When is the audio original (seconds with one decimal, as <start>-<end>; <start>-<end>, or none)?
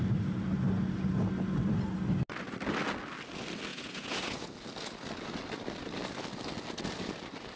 0.0-3.7; 4.5-7.6